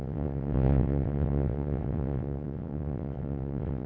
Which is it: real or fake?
fake